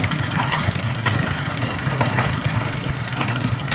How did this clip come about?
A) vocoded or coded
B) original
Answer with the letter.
A